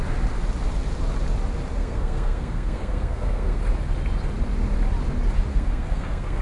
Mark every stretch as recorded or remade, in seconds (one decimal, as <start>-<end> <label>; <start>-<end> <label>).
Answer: 0.0-1.8 recorded; 1.8-3.6 remade; 3.6-5.5 recorded; 5.5-6.4 remade